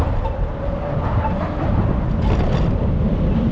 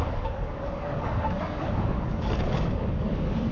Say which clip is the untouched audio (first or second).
first